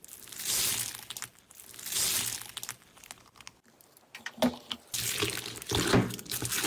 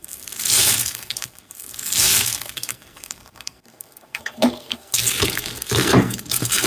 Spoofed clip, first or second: second